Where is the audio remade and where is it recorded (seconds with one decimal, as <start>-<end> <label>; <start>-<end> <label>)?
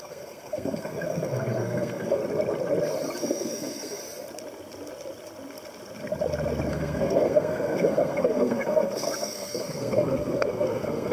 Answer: 0.0-2.2 remade; 2.2-3.2 recorded; 3.2-4.0 remade; 4.0-6.7 recorded; 6.7-11.1 remade